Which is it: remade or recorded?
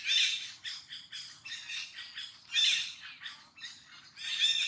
recorded